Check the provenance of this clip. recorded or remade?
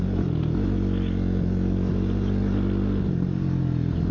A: recorded